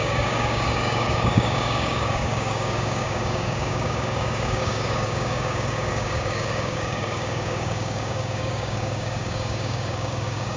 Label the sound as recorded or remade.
remade